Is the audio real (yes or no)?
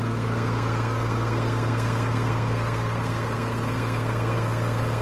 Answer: no